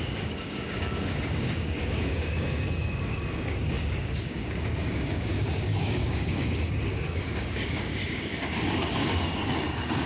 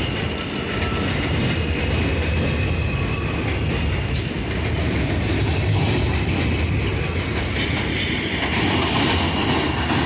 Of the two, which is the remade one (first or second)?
first